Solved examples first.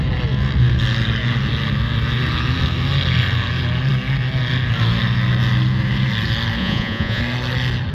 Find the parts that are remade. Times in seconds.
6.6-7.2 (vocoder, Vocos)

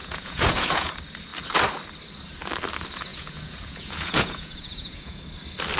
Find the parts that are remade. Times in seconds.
0.0-0.9 (vocoder, Vocos); 3.1-5.2

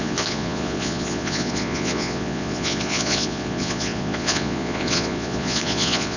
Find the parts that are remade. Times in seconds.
0.0-6.2 (vocoder, Vocos)

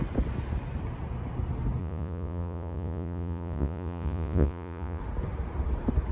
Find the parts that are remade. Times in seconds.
1.8-5.0 (vocoder, Vocos)

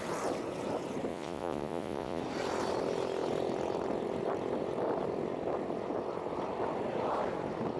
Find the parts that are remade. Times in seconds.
1.1-2.2 (vocoder, Vocos)